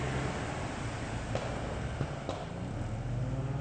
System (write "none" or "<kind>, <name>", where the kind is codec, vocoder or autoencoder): none